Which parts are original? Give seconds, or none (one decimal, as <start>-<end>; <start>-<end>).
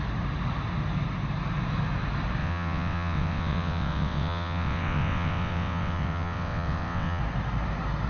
0.0-2.4; 7.2-8.1